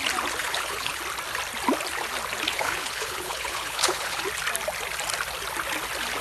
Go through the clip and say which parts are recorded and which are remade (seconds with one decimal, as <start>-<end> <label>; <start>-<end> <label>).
0.0-0.4 recorded; 0.4-1.0 remade; 1.0-2.5 recorded; 2.5-4.2 remade; 4.2-6.2 recorded